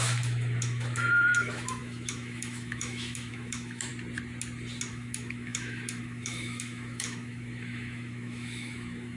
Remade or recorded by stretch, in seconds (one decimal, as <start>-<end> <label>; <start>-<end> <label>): 0.0-3.9 remade; 3.9-4.9 recorded; 4.9-9.2 remade